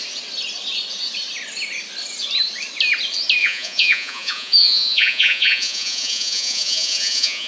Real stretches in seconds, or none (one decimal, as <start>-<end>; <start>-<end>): 0.0-3.4